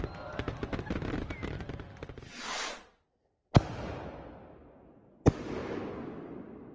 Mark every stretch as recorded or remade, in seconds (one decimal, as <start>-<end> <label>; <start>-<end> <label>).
0.0-2.3 recorded; 2.3-2.8 remade; 2.8-6.7 recorded

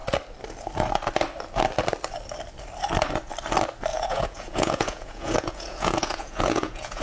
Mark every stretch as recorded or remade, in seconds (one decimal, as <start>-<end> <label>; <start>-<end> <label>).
0.0-3.9 recorded; 3.9-7.0 remade

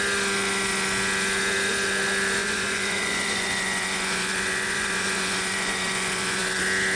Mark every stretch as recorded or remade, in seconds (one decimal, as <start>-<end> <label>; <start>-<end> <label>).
0.0-2.4 recorded; 2.4-6.6 remade; 6.6-7.0 recorded

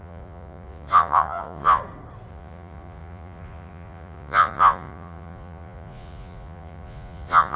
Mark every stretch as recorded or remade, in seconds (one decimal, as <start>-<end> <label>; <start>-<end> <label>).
0.0-1.8 remade; 1.8-2.3 recorded; 2.3-7.6 remade

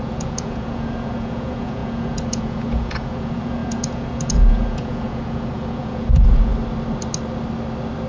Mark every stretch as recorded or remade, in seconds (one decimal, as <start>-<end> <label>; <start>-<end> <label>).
0.0-6.5 remade; 6.5-8.1 recorded

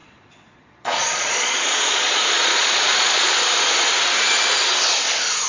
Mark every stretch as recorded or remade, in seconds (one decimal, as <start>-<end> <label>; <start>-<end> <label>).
0.0-3.3 remade; 3.3-5.5 recorded

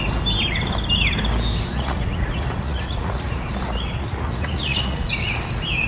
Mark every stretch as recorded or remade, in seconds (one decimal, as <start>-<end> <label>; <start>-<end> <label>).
0.0-1.7 recorded; 1.7-5.1 remade; 5.1-5.9 recorded